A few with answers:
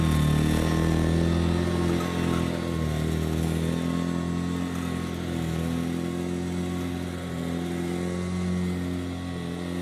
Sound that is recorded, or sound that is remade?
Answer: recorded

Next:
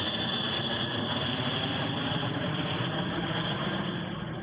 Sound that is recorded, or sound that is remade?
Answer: remade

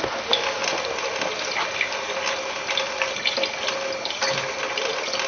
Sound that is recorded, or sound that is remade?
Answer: recorded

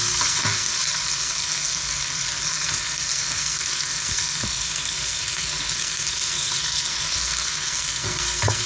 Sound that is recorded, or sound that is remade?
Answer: remade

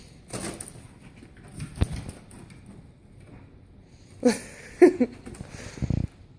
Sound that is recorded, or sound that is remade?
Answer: recorded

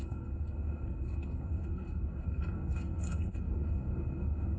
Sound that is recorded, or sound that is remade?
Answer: remade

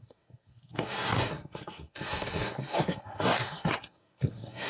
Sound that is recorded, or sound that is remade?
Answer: remade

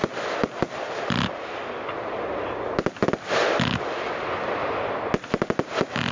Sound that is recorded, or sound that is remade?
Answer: recorded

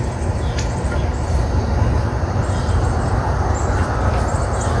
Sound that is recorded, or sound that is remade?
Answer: recorded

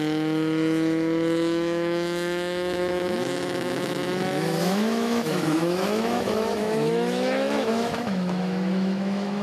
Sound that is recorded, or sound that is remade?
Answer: remade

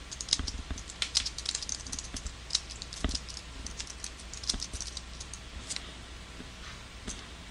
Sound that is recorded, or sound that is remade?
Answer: recorded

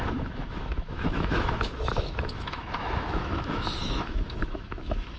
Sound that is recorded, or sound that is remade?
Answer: remade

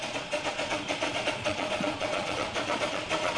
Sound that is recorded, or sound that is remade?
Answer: remade